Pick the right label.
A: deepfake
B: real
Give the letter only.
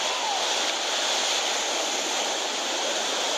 B